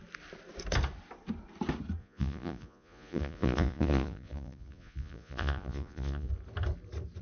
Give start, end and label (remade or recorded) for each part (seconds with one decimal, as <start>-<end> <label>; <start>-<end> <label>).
0.0-2.0 recorded; 2.0-6.3 remade; 6.3-7.2 recorded